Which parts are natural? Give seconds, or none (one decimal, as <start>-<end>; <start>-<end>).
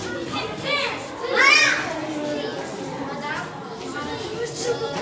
0.0-5.0